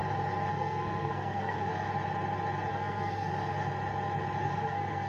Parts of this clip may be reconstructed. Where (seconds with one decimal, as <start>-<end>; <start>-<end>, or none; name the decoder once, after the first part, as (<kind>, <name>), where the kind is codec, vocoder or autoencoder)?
0.5-1.7 (codec, SNAC); 2.7-3.3; 4.4-5.1